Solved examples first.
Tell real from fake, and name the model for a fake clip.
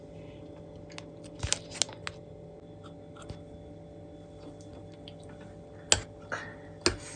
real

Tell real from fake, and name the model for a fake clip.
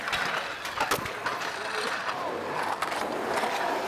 real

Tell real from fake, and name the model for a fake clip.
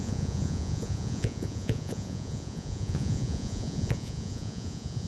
fake, vocoder, Vocos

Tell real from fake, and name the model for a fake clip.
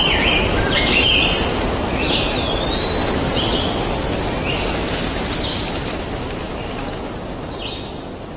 fake, vocoder, BigVGAN v2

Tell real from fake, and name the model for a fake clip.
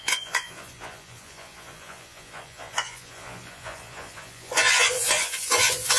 fake, vocoder, Vocos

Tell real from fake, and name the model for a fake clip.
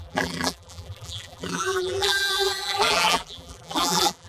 fake, vocoder, BigVGAN v2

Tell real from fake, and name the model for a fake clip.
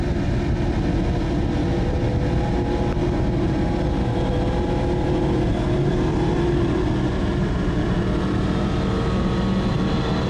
real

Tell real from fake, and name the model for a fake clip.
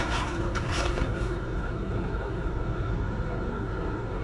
fake, codec, SNAC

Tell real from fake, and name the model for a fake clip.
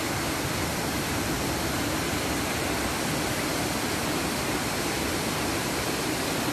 real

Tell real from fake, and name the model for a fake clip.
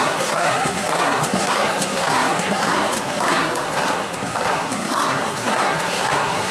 fake, codec, SNAC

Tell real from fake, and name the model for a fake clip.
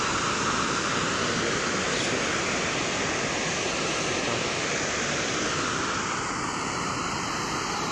real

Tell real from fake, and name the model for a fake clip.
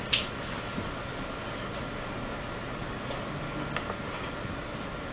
real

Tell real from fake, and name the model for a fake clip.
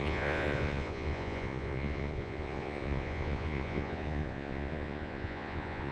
fake, vocoder, Vocos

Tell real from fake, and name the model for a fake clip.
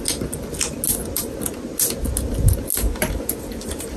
real